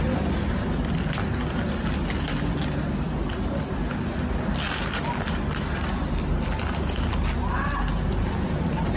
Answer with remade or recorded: recorded